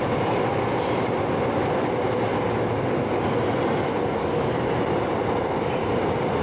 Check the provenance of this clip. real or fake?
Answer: real